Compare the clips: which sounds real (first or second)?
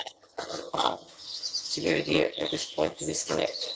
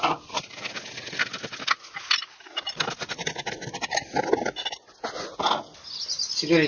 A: second